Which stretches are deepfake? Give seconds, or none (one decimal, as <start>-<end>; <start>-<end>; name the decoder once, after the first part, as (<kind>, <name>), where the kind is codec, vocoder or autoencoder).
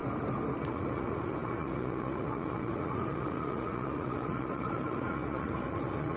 0.6-6.2 (vocoder, Vocos)